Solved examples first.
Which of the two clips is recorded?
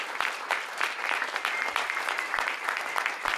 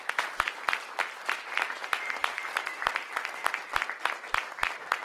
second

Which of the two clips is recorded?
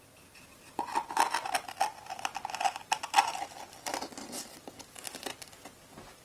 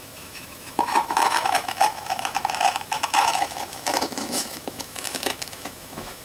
first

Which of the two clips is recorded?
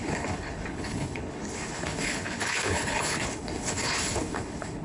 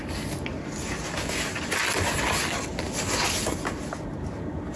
second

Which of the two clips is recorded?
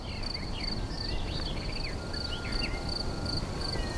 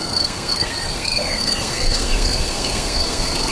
first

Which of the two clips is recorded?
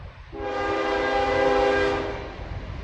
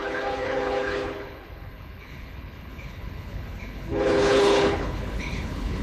first